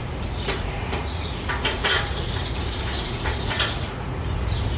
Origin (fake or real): fake